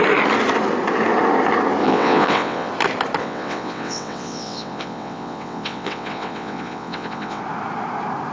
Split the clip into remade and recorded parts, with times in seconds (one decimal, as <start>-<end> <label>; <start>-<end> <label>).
0.0-1.8 recorded; 1.8-2.7 remade; 2.7-3.2 recorded; 3.2-7.4 remade; 7.4-8.3 recorded